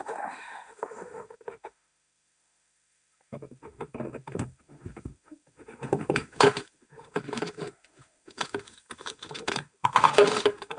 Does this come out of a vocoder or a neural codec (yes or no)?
yes